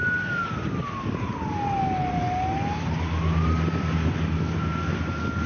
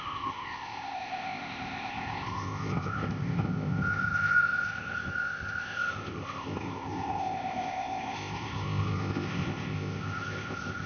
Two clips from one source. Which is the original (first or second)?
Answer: first